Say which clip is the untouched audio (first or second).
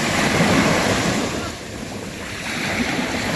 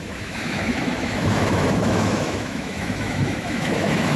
first